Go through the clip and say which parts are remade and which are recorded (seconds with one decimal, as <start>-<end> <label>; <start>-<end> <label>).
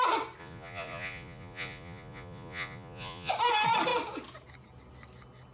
0.0-0.4 recorded; 0.4-3.3 remade; 3.3-5.5 recorded